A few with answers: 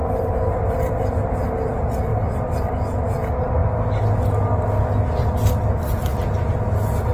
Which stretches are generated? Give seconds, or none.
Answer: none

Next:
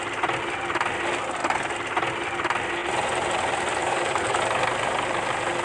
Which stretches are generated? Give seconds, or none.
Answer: 3.8-4.4 (codec, DAC)

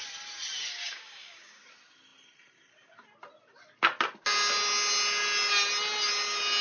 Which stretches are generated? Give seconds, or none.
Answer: 0.7-1.6 (codec, DAC)

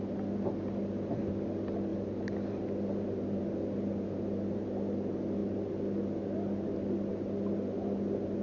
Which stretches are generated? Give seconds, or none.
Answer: none